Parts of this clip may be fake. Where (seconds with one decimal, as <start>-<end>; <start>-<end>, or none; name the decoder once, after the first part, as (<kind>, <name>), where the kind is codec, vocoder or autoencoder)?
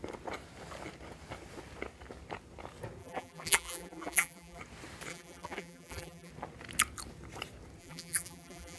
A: 3.0-4.6 (vocoder, BigVGAN v2); 5.1-6.3; 7.8-8.8